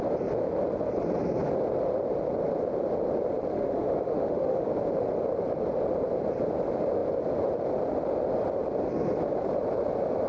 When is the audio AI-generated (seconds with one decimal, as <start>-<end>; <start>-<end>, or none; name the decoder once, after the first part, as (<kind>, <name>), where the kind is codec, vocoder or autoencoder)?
3.5-4.7 (autoencoder, DAC-VAE)